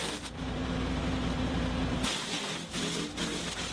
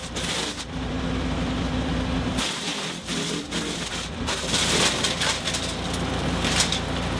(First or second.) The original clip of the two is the first